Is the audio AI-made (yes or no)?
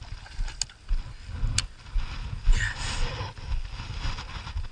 no